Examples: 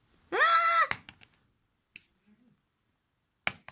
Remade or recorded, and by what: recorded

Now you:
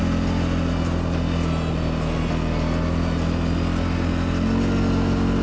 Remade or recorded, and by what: recorded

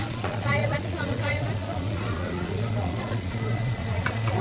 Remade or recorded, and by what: remade, vocoder, Vocos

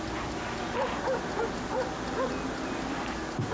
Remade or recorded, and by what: recorded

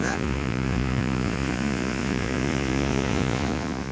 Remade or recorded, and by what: remade, vocoder, Vocos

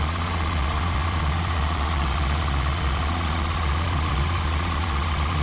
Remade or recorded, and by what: remade, vocoder, Vocos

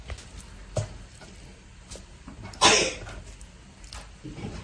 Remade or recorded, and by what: recorded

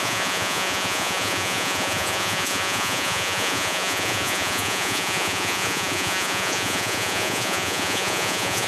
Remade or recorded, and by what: remade, vocoder, Vocos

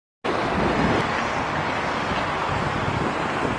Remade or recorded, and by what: recorded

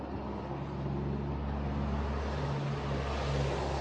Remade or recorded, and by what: recorded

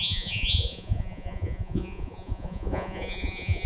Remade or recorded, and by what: remade, vocoder, Vocos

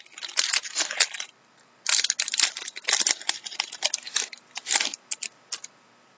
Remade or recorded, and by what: recorded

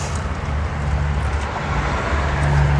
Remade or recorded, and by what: recorded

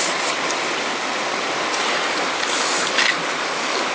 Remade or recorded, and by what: recorded